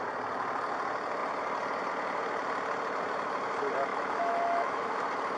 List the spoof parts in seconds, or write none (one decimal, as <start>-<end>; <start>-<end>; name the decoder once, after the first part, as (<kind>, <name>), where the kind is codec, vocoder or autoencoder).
3.9-5.0 (autoencoder, DAC-VAE)